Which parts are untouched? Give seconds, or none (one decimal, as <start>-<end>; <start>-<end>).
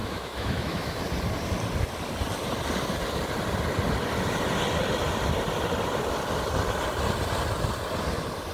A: 1.0-8.5